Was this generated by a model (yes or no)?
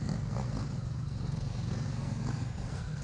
yes